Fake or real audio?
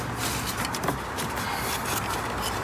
real